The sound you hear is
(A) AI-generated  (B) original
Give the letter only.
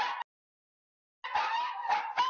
B